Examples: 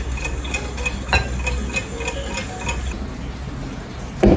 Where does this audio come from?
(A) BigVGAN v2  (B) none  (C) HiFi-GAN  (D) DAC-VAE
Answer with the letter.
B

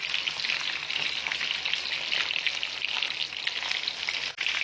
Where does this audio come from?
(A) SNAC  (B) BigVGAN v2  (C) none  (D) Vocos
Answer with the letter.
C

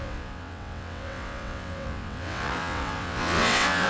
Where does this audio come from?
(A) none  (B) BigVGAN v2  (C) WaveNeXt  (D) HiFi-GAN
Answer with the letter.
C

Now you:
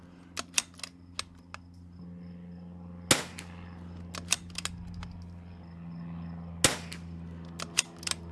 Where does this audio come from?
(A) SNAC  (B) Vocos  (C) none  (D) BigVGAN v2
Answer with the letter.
C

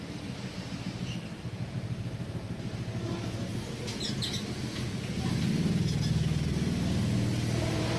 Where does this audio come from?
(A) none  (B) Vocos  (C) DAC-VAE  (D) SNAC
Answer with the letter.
A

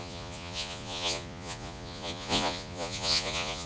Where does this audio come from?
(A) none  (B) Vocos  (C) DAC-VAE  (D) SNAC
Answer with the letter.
B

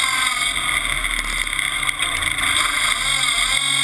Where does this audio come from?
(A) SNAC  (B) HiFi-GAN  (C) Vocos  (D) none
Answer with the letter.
D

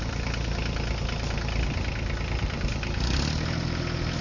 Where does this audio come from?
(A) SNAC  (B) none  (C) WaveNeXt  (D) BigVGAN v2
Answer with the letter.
B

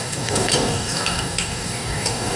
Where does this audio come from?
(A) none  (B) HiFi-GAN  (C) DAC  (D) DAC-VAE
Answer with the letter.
C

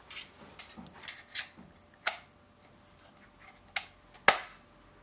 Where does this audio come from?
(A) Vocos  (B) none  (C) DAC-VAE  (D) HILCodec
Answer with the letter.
B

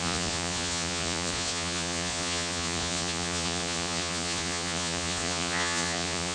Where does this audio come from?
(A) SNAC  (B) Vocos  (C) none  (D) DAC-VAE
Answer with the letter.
B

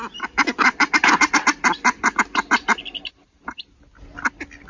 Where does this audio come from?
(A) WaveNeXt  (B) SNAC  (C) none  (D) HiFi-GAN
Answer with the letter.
C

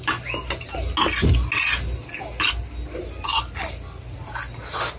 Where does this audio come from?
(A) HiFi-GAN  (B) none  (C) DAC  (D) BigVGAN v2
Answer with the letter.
B